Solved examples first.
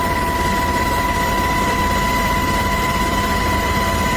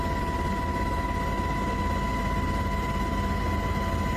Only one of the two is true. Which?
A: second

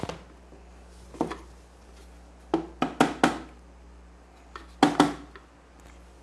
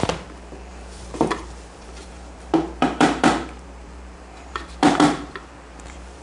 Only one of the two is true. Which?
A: first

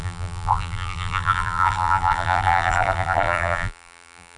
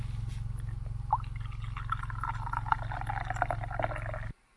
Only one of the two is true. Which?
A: second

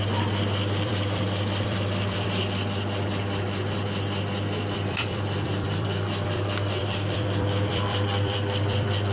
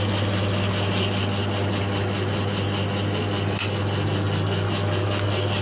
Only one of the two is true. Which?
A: second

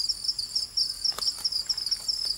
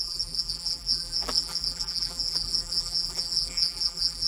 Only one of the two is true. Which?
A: first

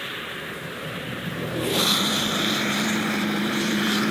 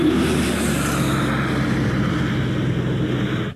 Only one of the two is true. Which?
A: second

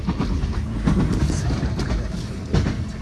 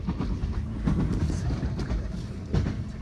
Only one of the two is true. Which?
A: first